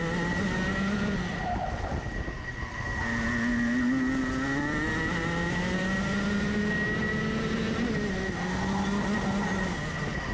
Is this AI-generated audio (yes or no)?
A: no